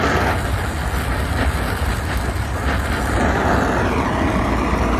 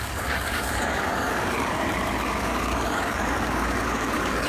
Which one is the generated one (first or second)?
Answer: second